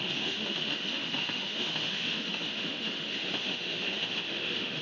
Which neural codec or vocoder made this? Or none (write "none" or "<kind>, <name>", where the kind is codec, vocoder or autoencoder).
autoencoder, DAC-VAE